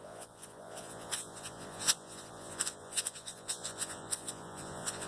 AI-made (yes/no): yes